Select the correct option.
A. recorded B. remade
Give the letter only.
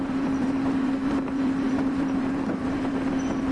B